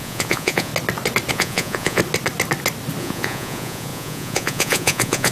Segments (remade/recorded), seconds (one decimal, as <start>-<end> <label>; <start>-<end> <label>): 0.0-0.7 remade; 0.7-1.3 recorded; 1.3-2.0 remade; 2.0-3.0 recorded; 3.0-5.3 remade